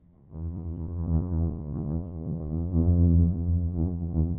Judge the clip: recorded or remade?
remade